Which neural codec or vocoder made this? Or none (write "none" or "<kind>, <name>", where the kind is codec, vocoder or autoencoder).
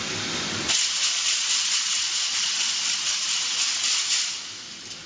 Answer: none